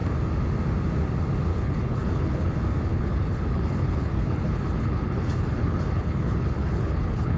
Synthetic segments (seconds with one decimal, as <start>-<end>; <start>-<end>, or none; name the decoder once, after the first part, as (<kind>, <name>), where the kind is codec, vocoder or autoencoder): 1.5-2.5 (codec, HILCodec); 2.9-7.4